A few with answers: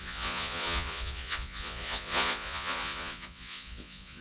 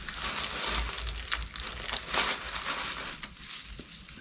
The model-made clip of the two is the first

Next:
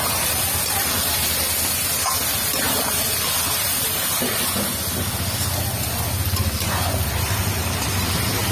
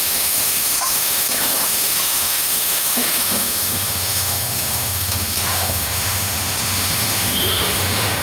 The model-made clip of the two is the second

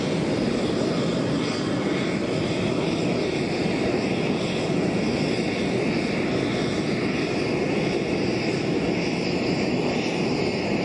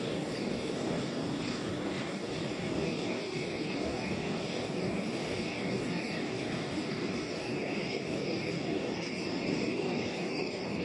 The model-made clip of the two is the second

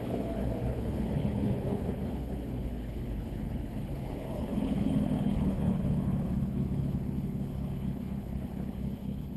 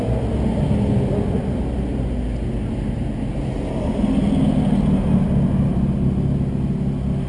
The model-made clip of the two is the first